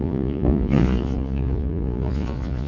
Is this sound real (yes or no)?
no